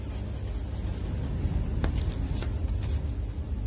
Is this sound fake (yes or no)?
no